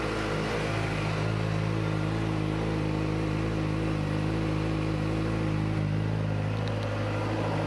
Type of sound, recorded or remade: recorded